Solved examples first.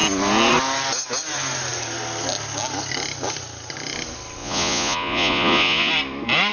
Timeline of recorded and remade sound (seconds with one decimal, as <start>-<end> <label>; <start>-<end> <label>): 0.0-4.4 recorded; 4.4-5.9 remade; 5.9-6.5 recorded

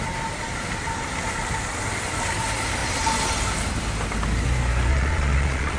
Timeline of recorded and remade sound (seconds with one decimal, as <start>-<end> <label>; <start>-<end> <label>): 0.0-4.9 recorded; 4.9-5.8 remade

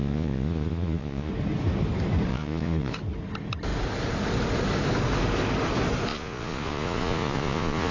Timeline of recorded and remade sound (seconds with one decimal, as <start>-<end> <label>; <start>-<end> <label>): 0.0-1.3 remade; 1.3-2.3 recorded; 2.3-2.9 remade; 2.9-6.1 recorded; 6.1-7.9 remade

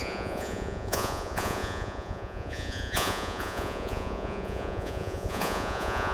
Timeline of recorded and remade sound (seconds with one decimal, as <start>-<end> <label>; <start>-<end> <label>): 0.0-6.1 remade